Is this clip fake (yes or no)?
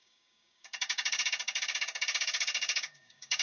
yes